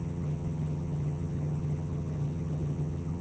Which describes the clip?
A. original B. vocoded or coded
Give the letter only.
B